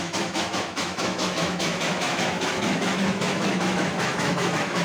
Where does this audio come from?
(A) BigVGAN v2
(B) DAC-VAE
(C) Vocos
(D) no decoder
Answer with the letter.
B